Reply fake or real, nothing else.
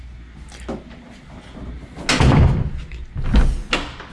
real